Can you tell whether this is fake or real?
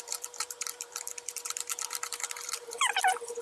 fake